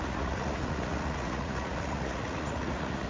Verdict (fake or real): fake